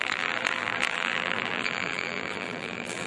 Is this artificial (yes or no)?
yes